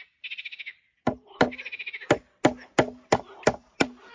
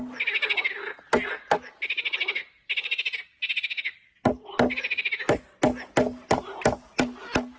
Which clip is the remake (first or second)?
first